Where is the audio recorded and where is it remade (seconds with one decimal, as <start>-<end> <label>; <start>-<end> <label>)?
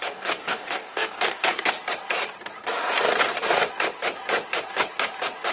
0.0-1.6 remade; 1.6-5.5 recorded